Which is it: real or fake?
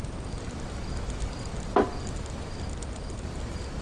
real